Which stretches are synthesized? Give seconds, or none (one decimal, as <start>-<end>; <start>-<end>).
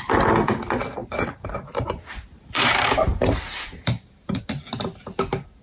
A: 1.0-4.4